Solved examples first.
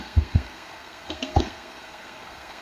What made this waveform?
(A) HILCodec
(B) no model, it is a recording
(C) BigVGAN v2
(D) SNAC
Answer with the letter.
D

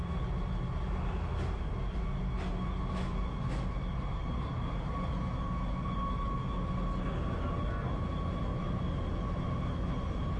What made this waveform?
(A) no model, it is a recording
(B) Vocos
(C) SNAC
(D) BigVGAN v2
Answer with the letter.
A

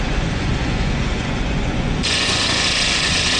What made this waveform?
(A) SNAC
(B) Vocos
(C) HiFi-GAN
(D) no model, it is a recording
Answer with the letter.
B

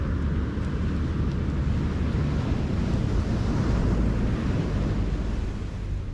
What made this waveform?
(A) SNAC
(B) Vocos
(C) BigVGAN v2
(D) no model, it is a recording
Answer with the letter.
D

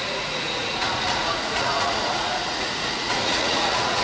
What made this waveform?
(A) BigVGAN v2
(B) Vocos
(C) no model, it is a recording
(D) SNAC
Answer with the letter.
B